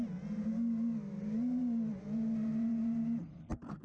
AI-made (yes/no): no